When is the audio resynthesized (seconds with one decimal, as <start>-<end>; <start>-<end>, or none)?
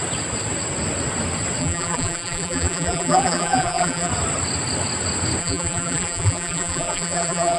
1.6-4.1; 5.4-7.6